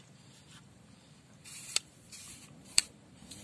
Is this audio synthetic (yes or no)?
yes